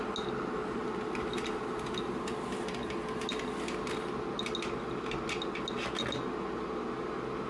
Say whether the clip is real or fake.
real